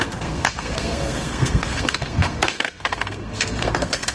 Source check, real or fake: fake